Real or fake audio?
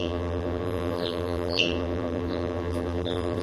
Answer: fake